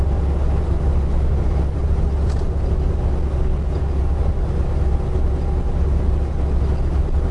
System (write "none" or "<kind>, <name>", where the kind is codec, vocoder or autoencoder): none